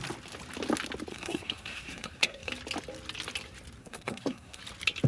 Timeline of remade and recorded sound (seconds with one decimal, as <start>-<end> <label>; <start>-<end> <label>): 0.0-1.1 recorded; 1.1-2.5 remade; 2.5-3.8 recorded; 3.8-4.6 remade; 4.6-5.1 recorded